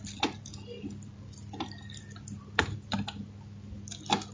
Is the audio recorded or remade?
recorded